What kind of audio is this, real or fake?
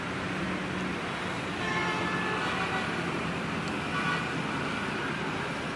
real